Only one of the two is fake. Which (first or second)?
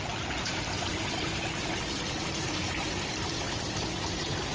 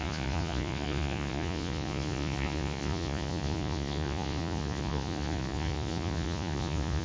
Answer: second